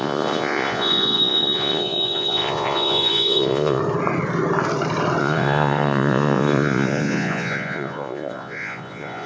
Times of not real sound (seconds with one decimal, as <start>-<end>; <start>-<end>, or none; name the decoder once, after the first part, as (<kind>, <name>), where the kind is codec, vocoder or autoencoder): 0.0-3.8 (vocoder, Vocos); 5.2-9.3